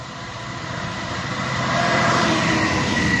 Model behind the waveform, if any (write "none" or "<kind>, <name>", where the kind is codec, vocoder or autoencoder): vocoder, BigVGAN v2